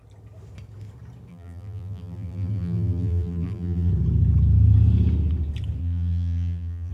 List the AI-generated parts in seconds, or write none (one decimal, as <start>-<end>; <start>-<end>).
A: 1.3-3.9; 5.8-6.9